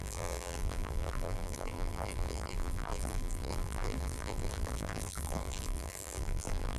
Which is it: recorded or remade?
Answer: remade